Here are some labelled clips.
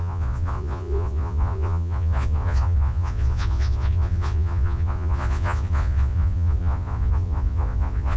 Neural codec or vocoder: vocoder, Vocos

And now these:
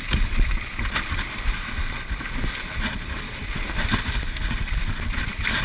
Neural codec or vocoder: none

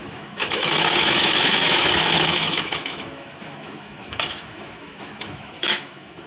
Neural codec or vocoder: autoencoder, DAC-VAE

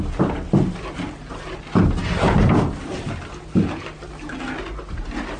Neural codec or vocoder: none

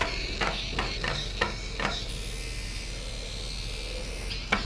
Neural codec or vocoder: none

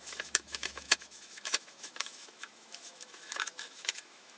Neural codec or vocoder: autoencoder, DAC-VAE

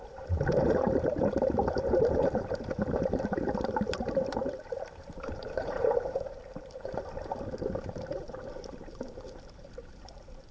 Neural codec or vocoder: vocoder, BigVGAN v2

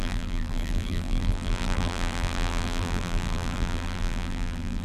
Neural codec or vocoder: vocoder, BigVGAN v2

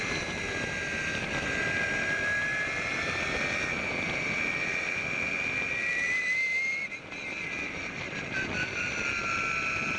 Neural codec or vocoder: vocoder, BigVGAN v2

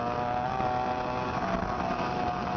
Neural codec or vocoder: none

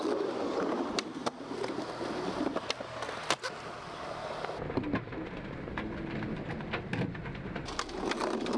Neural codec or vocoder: none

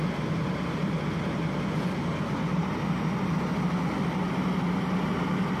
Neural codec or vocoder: none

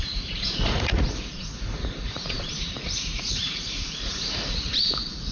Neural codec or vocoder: vocoder, Vocos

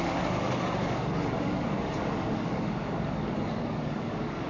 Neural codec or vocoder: codec, DAC